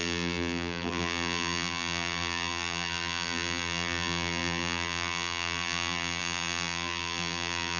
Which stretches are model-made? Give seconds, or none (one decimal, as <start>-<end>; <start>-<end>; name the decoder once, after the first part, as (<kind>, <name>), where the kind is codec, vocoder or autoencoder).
0.0-7.8 (vocoder, BigVGAN v2)